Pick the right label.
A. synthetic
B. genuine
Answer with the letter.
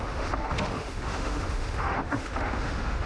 A